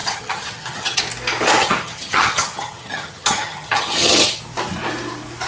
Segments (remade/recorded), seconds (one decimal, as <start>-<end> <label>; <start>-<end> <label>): 0.0-1.0 remade; 1.0-1.6 recorded; 1.6-4.4 remade; 4.4-5.5 recorded